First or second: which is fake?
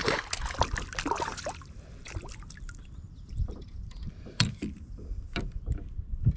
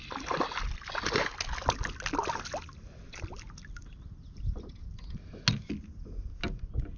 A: first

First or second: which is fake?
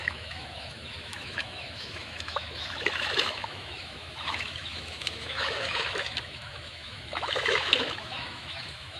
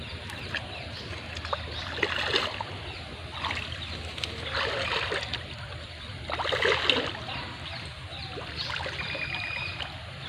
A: first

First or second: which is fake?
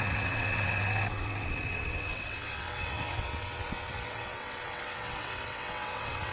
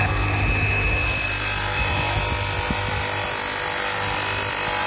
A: first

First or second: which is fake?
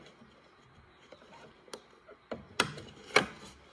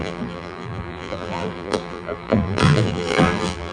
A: second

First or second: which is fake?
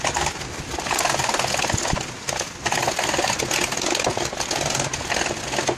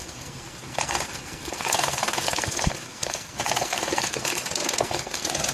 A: second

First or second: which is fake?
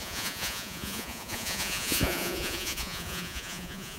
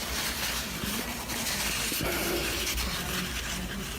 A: first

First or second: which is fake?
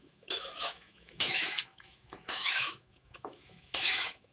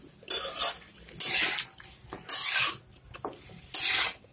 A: first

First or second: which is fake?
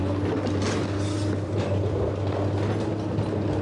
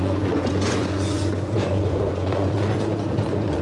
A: second